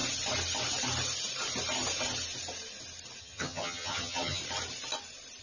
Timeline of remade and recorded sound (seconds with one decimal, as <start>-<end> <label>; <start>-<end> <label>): 0.0-3.2 recorded; 3.2-4.4 remade; 4.4-5.4 recorded

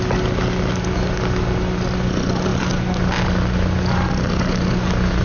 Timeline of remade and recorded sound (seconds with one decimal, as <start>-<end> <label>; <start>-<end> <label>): 0.0-5.2 recorded

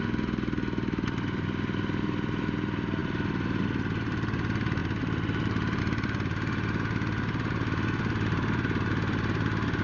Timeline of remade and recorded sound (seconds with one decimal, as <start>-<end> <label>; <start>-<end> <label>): 0.0-9.8 recorded

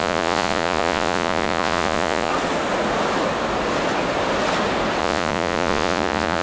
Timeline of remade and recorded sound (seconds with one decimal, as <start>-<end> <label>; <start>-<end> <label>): 0.0-2.3 remade; 2.3-5.0 recorded; 5.0-6.4 remade